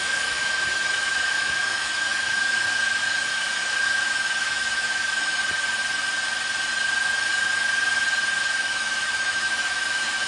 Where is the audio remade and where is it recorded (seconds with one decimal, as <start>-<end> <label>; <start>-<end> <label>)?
0.0-5.4 remade; 5.4-8.4 recorded; 8.4-10.3 remade